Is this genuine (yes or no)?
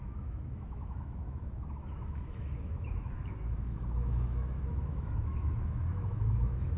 no